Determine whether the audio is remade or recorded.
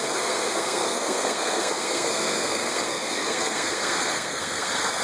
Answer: remade